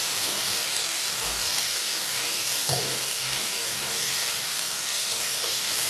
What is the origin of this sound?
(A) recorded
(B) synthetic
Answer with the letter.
B